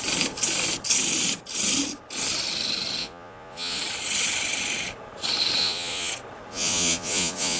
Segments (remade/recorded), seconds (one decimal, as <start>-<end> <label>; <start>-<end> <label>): 0.0-3.0 recorded; 3.0-3.8 remade; 3.8-5.6 recorded; 5.6-6.1 remade; 6.1-6.5 recorded; 6.5-7.6 remade

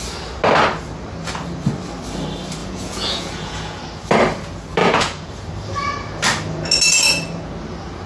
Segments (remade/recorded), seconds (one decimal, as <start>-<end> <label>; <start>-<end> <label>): 0.0-2.6 recorded; 2.6-3.8 remade; 3.8-4.8 recorded; 4.8-5.3 remade; 5.3-8.1 recorded

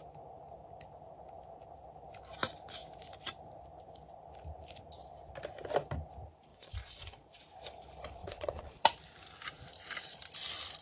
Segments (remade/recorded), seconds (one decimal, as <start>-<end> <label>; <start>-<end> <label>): 0.0-6.5 recorded; 6.5-7.4 remade; 7.4-8.2 recorded; 8.2-8.8 remade; 8.8-10.8 recorded

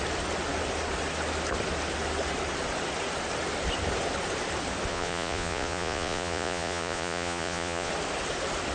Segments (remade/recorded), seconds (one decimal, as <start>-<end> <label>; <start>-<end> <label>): 0.0-4.9 recorded; 4.9-7.9 remade; 7.9-8.7 recorded

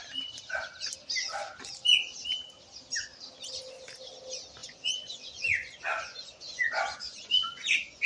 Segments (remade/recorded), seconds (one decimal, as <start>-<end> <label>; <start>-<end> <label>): 0.0-4.6 recorded; 4.6-8.1 remade

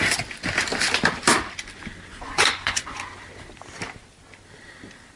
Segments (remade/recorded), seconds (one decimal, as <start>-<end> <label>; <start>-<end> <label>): 0.0-2.1 recorded; 2.1-3.0 remade; 3.0-5.2 recorded

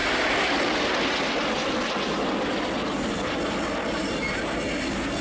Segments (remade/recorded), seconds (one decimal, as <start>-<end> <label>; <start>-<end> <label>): 0.0-5.2 recorded

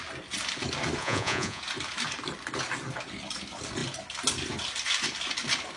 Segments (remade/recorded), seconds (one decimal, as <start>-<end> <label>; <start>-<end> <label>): 0.0-1.0 recorded; 1.0-1.6 remade; 1.6-5.8 recorded